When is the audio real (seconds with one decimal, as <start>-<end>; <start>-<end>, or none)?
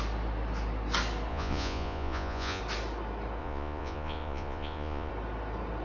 0.0-1.3; 2.6-3.4; 5.1-5.8